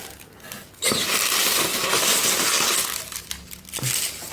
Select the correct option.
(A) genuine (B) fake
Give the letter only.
A